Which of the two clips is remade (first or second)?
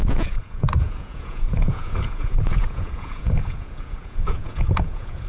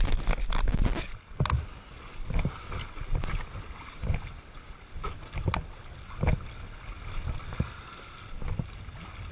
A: first